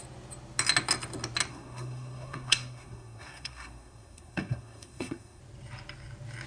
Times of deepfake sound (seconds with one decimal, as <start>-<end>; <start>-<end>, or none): 1.5-5.4